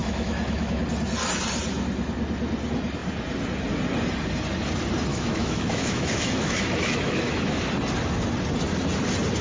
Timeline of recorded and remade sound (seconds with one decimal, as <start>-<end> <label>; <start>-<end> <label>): 0.0-0.8 remade; 0.8-5.1 recorded; 5.1-7.7 remade; 7.7-9.4 recorded